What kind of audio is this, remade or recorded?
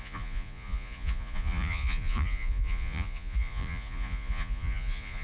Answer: remade